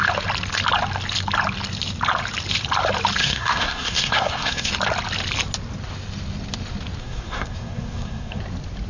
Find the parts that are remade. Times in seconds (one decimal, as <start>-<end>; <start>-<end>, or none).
3.2-4.7; 7.0-8.4